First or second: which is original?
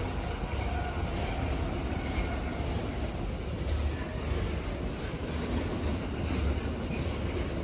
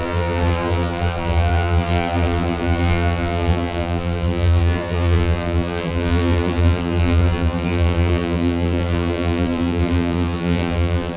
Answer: first